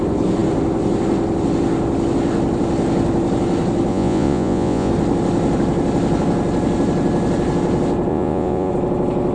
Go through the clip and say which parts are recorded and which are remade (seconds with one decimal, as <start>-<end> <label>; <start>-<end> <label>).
0.0-3.9 recorded; 3.9-4.9 remade; 4.9-8.1 recorded; 8.1-8.7 remade; 8.7-9.3 recorded